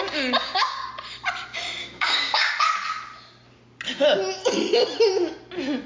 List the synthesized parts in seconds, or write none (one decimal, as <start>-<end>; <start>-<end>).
0.4-0.9; 1.8-2.5